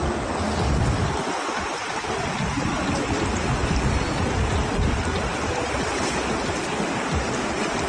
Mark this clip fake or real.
real